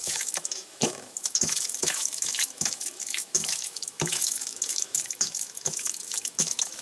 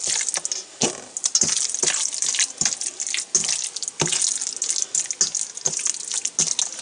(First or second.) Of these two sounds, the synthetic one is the first